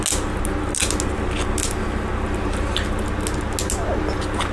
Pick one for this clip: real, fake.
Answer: real